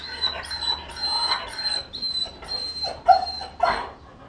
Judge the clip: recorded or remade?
recorded